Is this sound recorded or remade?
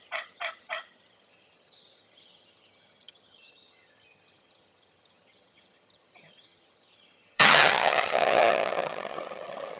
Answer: remade